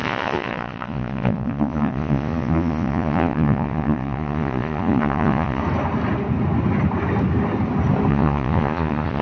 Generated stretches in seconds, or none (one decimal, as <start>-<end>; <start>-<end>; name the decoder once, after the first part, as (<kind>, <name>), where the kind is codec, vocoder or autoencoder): 0.0-5.6 (vocoder, Vocos); 8.1-9.2

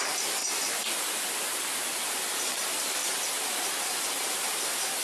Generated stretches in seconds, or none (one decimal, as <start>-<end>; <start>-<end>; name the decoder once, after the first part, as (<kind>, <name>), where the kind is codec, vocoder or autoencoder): 0.0-0.4 (vocoder, BigVGAN v2); 2.0-5.0

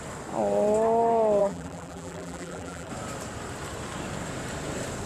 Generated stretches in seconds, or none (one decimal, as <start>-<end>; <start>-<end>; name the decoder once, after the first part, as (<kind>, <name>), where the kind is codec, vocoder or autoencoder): 1.4-2.9 (vocoder, BigVGAN v2)

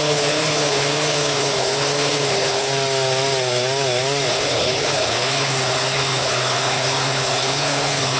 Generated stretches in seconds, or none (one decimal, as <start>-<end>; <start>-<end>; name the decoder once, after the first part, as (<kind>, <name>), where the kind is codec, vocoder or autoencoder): 0.0-2.7 (codec, HILCodec); 4.3-8.2

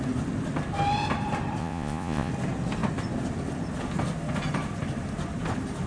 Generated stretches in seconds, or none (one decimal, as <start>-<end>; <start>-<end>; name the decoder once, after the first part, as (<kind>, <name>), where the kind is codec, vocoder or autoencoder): 1.6-2.3 (vocoder, Vocos)

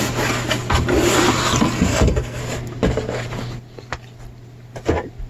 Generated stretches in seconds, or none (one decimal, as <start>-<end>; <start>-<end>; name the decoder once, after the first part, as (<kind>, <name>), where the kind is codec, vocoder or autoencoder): 1.9-2.4 (codec, SNAC)